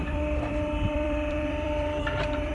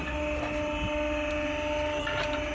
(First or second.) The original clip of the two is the second